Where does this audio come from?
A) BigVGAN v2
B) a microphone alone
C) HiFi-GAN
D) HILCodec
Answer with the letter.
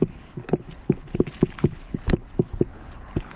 D